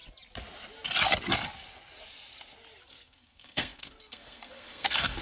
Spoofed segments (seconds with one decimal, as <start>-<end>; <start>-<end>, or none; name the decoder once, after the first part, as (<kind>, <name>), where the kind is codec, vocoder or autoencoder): 2.9-5.2 (codec, SNAC)